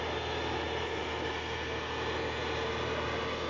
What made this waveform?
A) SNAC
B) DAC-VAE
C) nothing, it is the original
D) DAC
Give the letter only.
C